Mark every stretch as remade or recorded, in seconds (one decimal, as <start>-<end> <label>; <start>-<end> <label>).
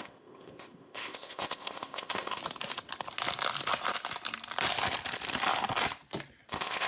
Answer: 0.0-2.4 remade; 2.4-6.5 recorded; 6.5-6.9 remade